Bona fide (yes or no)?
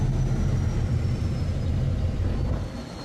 yes